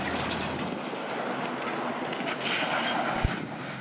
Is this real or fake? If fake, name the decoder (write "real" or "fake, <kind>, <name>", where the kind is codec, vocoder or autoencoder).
real